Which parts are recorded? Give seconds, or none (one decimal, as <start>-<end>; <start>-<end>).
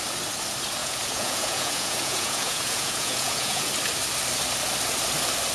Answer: 0.0-0.8; 3.7-5.5